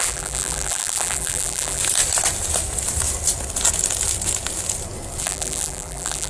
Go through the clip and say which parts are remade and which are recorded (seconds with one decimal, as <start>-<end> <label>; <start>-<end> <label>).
0.0-1.8 remade; 1.8-5.2 recorded; 5.2-6.3 remade